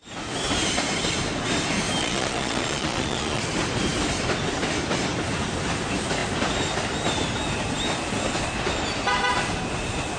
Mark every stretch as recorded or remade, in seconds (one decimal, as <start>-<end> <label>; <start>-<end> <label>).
0.0-2.0 recorded; 2.0-3.4 remade; 3.4-10.2 recorded